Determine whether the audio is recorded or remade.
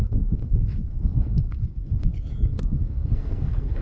remade